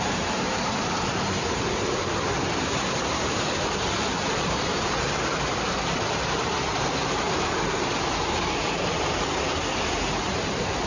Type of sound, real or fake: fake